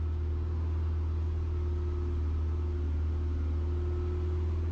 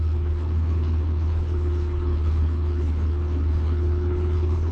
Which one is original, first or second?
first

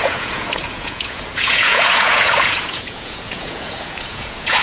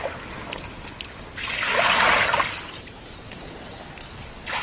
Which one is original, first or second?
second